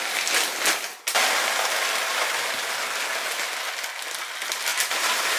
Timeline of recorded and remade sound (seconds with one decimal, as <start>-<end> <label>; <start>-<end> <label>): 0.0-4.7 recorded; 4.7-5.4 remade